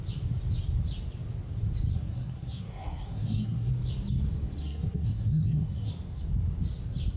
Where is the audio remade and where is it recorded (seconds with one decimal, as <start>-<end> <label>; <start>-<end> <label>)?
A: 0.0-1.9 recorded; 1.9-3.7 remade; 3.7-4.6 recorded; 4.6-5.9 remade; 5.9-7.2 recorded